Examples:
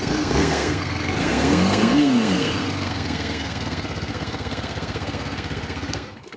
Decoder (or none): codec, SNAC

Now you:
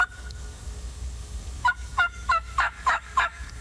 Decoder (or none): codec, DAC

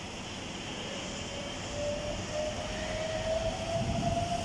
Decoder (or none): none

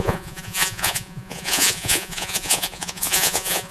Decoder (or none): vocoder, Vocos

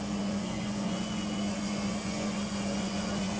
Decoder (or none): vocoder, Vocos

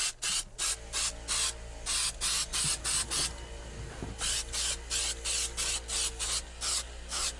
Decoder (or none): none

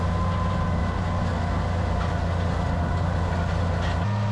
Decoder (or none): none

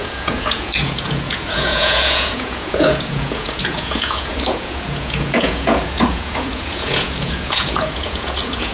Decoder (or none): vocoder, Vocos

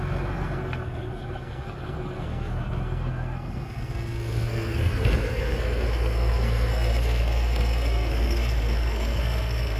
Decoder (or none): codec, SNAC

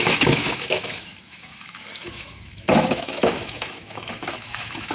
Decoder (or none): autoencoder, DAC-VAE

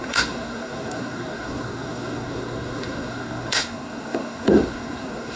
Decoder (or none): codec, SNAC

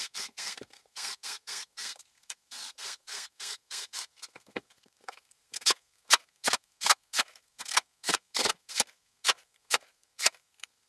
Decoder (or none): codec, SNAC